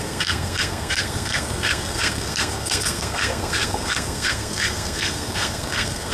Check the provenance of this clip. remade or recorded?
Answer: remade